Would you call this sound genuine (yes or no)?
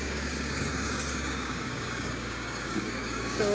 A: no